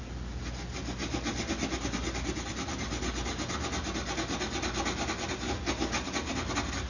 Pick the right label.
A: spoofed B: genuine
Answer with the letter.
B